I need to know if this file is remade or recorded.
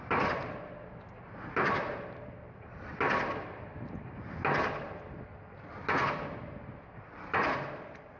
recorded